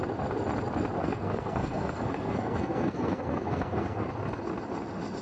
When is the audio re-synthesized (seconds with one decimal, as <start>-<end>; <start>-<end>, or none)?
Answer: 1.0-4.1